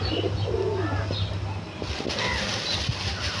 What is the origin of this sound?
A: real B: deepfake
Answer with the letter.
A